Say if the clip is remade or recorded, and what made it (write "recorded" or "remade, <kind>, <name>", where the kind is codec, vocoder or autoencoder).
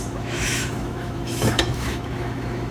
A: remade, autoencoder, DAC-VAE